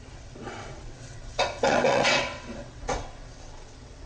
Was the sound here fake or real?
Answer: fake